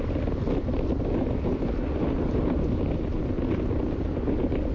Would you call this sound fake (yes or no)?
no